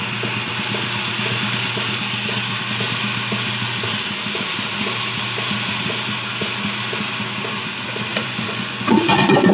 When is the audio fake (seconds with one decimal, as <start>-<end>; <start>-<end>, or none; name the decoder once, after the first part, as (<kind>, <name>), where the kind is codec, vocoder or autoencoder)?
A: 8.1-9.5 (vocoder, Vocos)